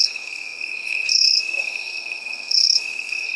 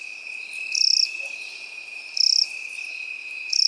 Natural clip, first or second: second